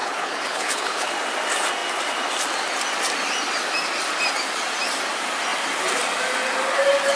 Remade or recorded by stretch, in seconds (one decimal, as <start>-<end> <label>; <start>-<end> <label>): 0.0-1.1 remade; 1.1-7.2 recorded

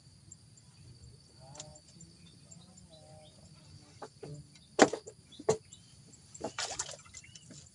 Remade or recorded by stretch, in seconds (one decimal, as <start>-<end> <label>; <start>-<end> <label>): 0.0-7.7 recorded